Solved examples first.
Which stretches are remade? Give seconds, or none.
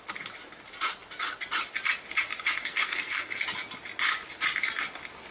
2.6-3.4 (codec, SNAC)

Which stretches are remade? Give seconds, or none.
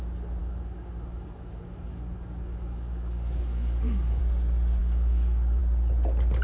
0.4-4.2 (codec, DAC); 4.8-5.6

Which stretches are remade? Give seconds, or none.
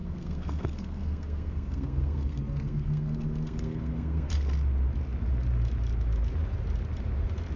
0.0-4.3 (codec, SNAC)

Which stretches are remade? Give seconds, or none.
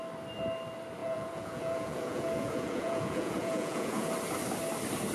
1.0-4.1 (vocoder, Vocos)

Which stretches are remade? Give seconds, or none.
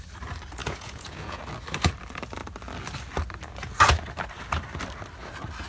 0.6-1.4 (vocoder, Vocos)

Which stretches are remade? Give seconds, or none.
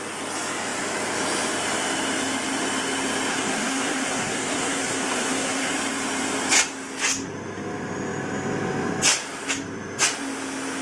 3.3-5.7 (codec, SNAC)